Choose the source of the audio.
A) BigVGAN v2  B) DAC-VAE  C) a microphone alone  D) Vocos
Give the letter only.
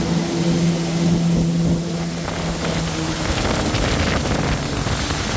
C